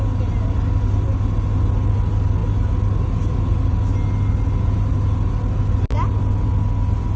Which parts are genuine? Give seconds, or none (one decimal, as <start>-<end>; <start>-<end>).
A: 0.0-7.2